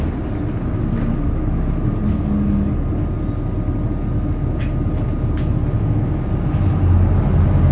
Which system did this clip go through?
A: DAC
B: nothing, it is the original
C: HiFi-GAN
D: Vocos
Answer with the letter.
B